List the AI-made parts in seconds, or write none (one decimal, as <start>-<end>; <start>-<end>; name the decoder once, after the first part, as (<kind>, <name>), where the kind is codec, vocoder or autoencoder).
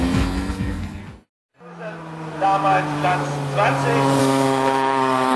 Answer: 0.0-1.0 (codec, SNAC); 4.2-5.4